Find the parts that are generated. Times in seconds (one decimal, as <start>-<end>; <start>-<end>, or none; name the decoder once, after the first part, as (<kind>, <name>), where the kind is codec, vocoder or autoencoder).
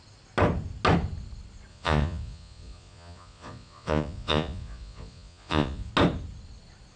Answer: 1.7-5.9 (vocoder, Vocos)